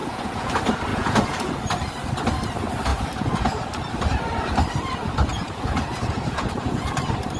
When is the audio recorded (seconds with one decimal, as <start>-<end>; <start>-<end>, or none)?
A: 0.5-0.9; 1.5-2.9; 3.7-5.3; 6.9-7.4